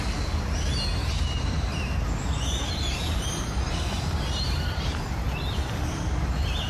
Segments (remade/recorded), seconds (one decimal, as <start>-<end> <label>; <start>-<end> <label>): 0.0-1.0 recorded; 1.0-5.0 remade; 5.0-6.7 recorded